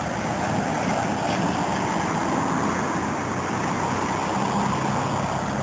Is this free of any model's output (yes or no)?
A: yes